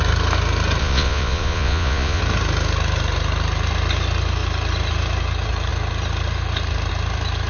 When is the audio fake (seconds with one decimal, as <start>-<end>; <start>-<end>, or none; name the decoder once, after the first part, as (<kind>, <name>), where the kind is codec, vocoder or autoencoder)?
0.8-2.2 (vocoder, Vocos)